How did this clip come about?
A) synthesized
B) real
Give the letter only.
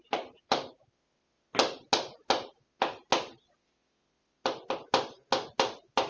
B